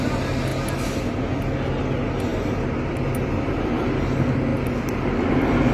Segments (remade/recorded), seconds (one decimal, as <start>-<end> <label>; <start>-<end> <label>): 0.0-5.7 recorded